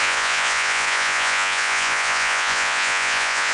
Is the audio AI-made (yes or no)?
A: yes